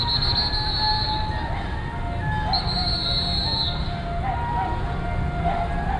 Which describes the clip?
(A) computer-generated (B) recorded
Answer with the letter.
B